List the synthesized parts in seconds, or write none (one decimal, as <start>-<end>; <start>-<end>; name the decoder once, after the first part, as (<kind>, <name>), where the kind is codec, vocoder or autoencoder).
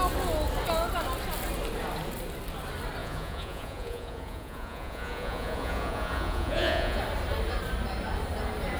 3.0-7.0 (vocoder, Vocos)